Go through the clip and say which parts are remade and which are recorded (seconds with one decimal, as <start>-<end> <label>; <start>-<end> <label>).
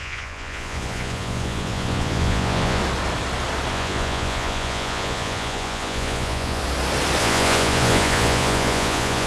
0.0-2.8 remade; 2.8-3.7 recorded; 3.7-6.6 remade; 6.6-7.2 recorded; 7.2-9.3 remade